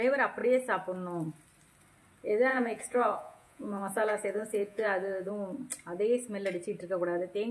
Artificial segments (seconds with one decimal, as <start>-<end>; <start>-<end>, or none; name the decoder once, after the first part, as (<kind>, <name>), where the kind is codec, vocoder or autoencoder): 2.5-5.3 (vocoder, Vocos)